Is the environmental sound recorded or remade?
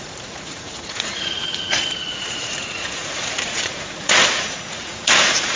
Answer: remade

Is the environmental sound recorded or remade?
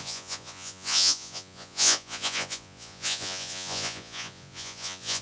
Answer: remade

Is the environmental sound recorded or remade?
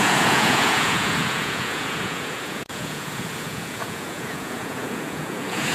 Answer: remade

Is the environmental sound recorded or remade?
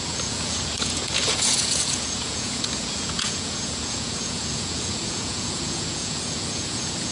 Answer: remade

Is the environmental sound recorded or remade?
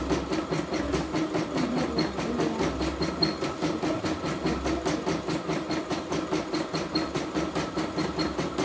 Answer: recorded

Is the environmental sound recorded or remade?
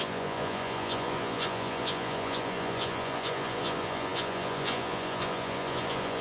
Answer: remade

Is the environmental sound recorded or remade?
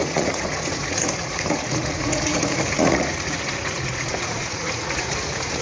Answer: remade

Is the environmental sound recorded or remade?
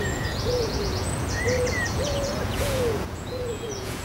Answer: remade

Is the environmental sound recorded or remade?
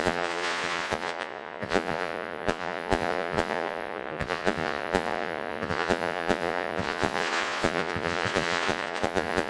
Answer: remade